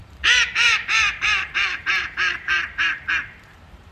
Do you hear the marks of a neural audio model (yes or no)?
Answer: yes